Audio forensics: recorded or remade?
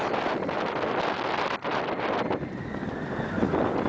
recorded